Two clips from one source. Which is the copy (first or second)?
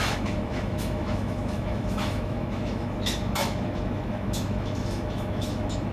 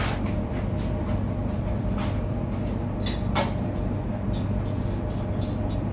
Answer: first